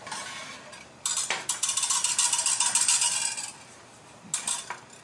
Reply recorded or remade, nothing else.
recorded